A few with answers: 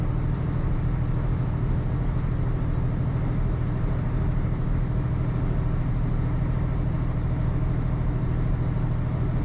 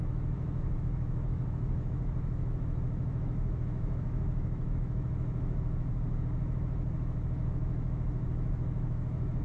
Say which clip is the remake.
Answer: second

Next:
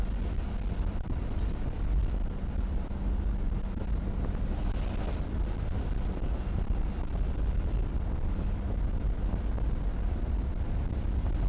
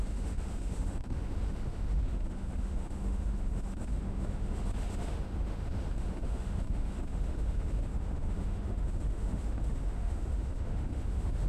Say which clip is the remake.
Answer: second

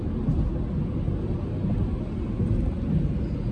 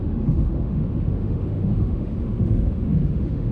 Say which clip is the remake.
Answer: second